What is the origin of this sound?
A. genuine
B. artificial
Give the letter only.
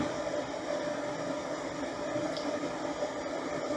A